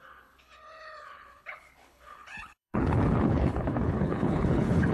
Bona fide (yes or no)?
no